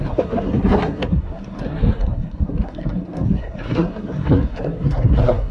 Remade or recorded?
remade